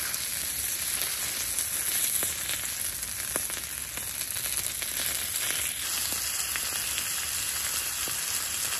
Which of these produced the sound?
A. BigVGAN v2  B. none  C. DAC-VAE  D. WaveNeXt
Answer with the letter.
B